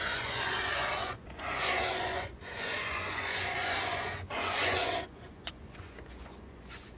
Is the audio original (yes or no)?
no